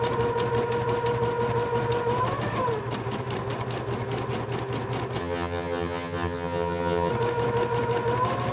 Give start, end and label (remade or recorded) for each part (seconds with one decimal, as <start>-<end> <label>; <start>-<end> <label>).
0.0-5.2 recorded; 5.2-7.1 remade; 7.1-8.5 recorded